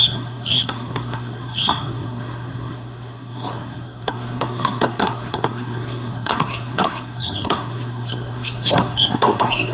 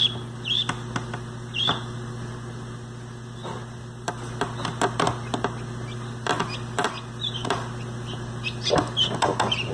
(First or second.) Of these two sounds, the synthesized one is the first